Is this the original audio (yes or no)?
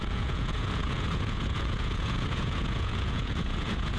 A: no